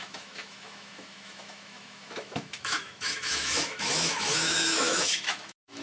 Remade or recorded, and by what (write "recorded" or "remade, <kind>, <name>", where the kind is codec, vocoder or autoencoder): remade, autoencoder, DAC-VAE